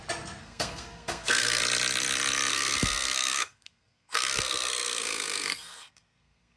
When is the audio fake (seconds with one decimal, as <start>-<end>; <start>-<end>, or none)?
0.4-1.6; 2.5-6.6